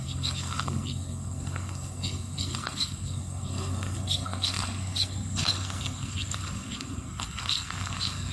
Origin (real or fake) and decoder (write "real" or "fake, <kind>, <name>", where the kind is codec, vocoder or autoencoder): fake, codec, SNAC